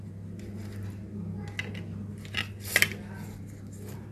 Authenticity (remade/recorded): recorded